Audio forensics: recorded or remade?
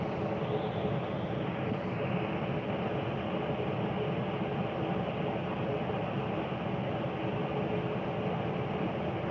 recorded